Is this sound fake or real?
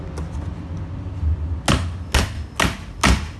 real